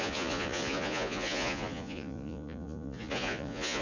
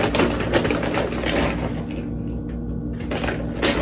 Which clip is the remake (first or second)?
first